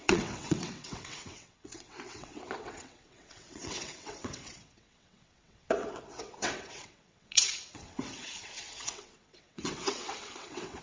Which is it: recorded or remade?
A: remade